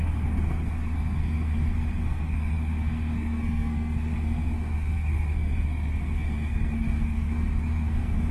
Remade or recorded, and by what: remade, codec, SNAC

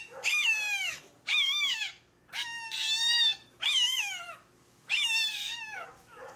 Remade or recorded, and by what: remade, codec, DAC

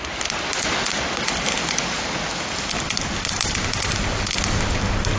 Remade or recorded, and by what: recorded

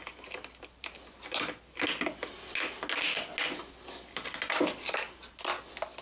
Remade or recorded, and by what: recorded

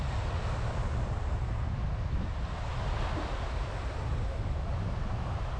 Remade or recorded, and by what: recorded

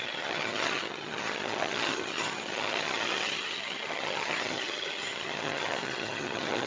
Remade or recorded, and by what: remade, vocoder, HiFi-GAN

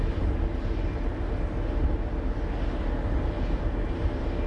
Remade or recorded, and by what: recorded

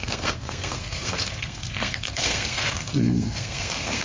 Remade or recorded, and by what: remade, codec, SNAC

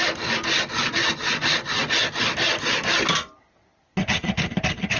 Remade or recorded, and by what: recorded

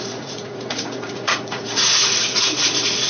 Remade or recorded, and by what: remade, vocoder, Vocos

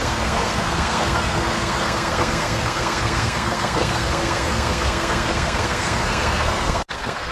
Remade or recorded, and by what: remade, codec, SNAC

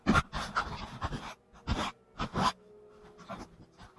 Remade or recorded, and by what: recorded